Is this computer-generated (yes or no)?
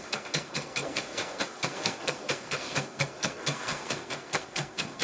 yes